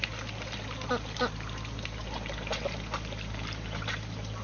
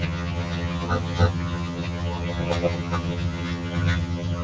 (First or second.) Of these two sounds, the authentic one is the first